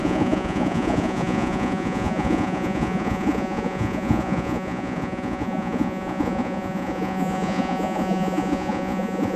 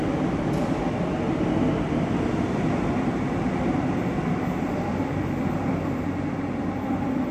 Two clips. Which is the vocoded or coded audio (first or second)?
first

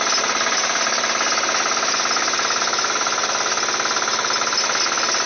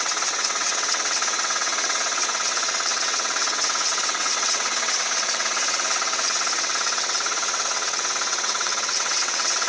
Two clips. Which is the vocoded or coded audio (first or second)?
second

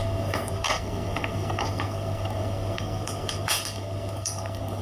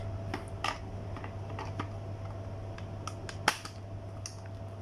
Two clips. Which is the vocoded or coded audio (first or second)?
first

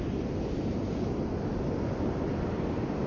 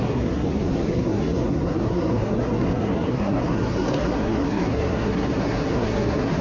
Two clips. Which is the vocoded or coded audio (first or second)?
second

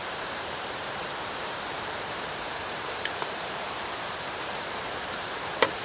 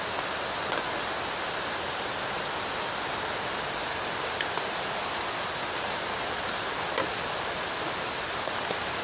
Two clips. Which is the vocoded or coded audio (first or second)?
first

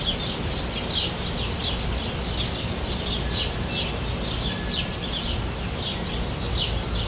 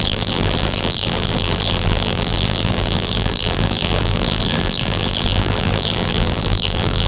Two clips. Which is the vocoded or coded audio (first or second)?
second